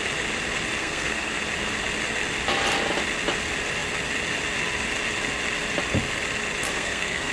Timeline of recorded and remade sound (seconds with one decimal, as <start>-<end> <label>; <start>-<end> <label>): 0.0-0.8 recorded; 0.8-1.4 remade; 1.4-6.7 recorded; 6.7-7.3 remade